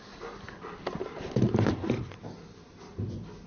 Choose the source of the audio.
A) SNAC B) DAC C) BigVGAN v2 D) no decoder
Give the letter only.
D